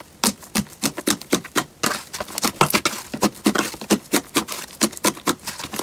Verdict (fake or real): real